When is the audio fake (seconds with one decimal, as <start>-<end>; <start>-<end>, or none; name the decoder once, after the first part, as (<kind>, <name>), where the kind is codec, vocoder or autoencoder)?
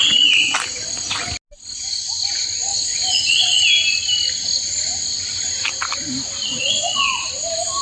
2.7-3.6 (vocoder, Vocos); 6.5-7.3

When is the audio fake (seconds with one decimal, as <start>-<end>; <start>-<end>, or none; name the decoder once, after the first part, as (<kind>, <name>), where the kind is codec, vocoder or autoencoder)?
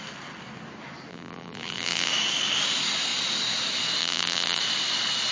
1.1-2.1 (vocoder, BigVGAN v2); 4.0-4.6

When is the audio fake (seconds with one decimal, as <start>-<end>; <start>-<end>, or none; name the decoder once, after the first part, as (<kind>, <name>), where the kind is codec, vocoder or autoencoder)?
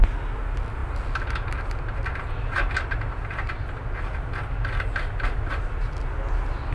none